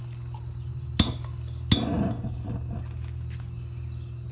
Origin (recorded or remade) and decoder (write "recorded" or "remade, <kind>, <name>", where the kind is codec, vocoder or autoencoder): recorded